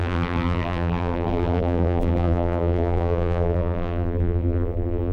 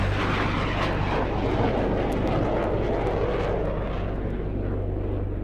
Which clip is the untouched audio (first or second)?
second